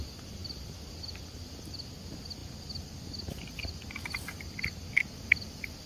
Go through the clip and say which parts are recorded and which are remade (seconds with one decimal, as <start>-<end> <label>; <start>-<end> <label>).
0.0-5.9 recorded